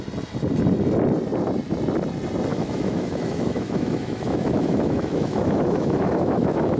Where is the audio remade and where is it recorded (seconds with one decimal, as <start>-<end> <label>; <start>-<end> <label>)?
0.0-2.5 recorded; 2.5-6.8 remade

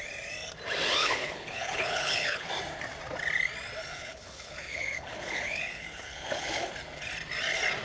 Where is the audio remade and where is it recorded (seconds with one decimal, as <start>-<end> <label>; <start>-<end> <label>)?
0.0-1.0 recorded; 1.0-2.5 remade; 2.5-3.9 recorded; 3.9-6.7 remade; 6.7-7.8 recorded